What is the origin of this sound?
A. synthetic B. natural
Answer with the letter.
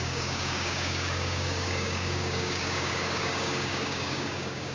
A